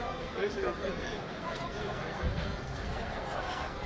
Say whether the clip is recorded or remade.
remade